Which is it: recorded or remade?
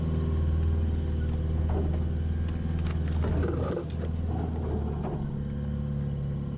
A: recorded